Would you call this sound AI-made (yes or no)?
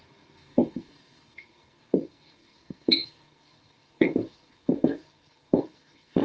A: yes